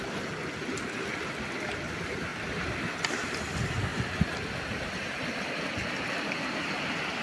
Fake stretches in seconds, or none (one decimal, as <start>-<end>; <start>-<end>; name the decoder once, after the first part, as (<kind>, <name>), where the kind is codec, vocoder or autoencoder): 3.9-5.2 (vocoder, BigVGAN v2)